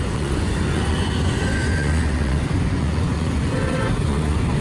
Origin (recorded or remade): remade